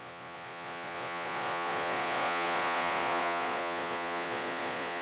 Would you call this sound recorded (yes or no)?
no